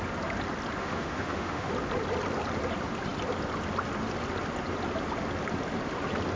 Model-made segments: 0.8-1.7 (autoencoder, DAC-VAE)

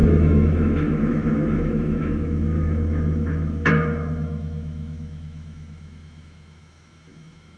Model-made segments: 0.0-7.6 (autoencoder, DAC-VAE)

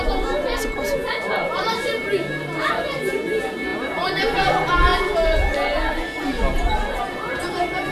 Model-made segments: 1.4-2.8 (vocoder, BigVGAN v2)

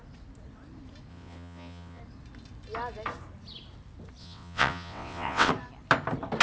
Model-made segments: 1.1-2.0 (vocoder, WaveNeXt); 4.2-5.5

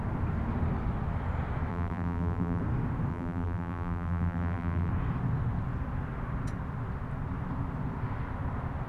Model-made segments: 1.7-2.6 (vocoder, BigVGAN v2); 3.1-4.9

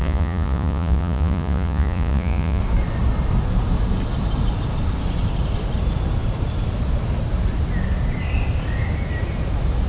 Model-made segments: 0.0-2.6 (vocoder, Vocos)